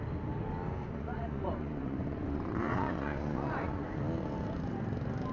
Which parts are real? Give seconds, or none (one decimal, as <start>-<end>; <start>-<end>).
0.0-0.8; 4.0-5.3